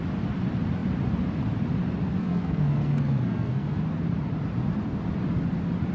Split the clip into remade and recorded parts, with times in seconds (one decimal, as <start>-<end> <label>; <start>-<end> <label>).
0.0-2.2 recorded; 2.2-3.8 remade; 3.8-5.9 recorded